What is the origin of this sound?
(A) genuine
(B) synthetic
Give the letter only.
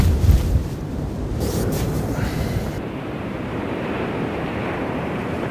B